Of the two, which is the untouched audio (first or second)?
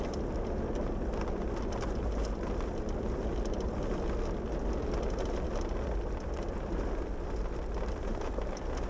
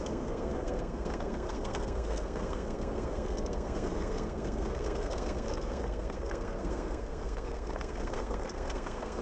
first